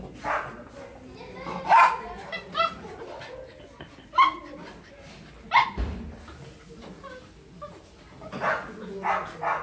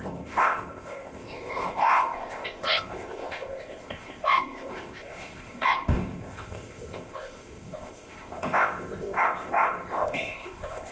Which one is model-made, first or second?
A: second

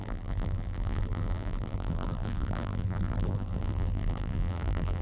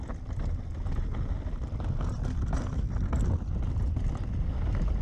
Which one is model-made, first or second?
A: first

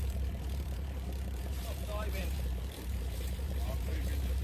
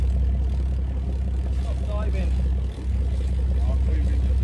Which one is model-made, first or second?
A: first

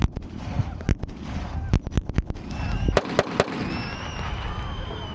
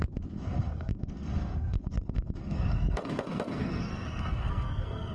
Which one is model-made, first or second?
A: second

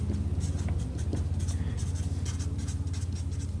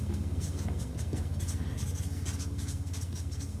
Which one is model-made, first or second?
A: second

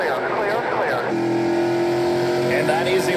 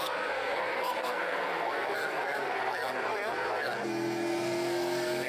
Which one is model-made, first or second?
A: second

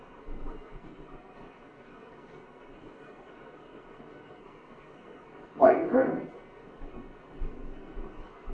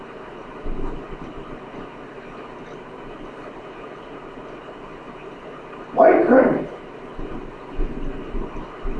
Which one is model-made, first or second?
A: first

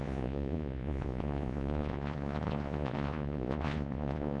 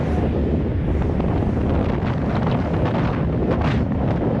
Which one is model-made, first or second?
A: first